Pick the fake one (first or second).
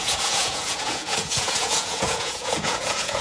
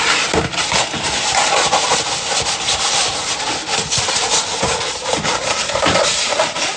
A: first